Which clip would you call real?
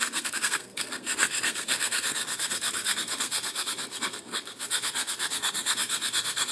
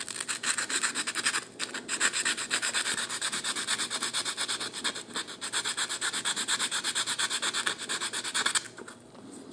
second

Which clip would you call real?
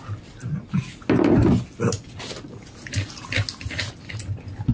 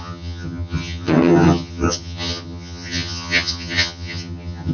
first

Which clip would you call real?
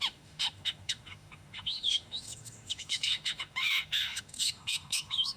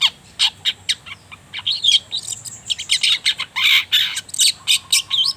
second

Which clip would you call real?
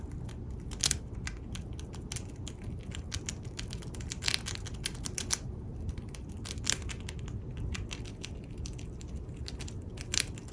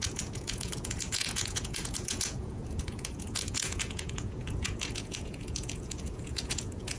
first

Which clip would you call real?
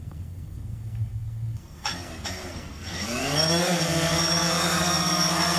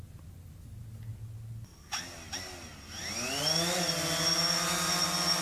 second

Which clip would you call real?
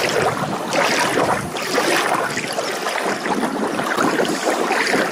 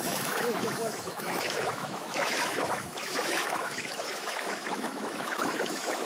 first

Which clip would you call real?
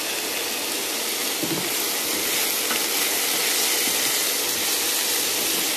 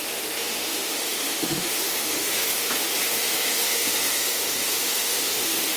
first